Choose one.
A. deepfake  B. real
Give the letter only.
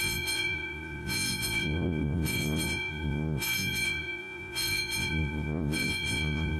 A